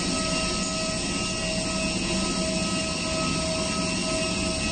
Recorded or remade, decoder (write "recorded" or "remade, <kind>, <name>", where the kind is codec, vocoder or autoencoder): recorded